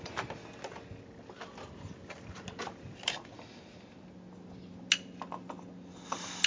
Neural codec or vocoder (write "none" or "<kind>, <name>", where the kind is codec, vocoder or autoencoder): none